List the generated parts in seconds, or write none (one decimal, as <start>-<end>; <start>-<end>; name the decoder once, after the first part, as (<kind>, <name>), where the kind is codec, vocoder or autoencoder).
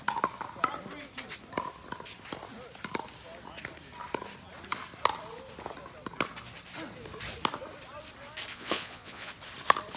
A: 8.5-9.3 (vocoder, Vocos)